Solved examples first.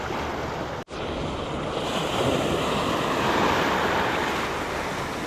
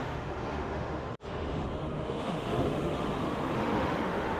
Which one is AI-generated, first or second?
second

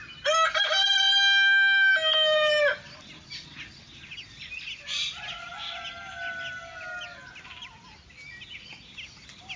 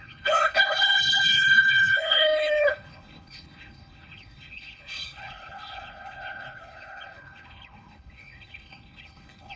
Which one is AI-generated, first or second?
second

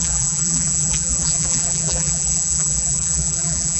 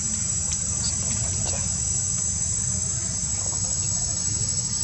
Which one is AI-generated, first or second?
first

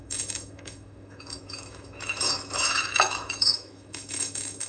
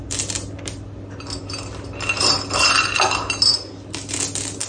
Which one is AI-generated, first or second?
first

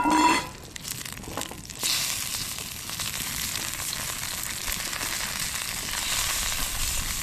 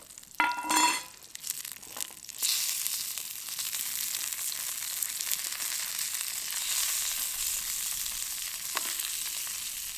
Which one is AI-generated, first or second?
first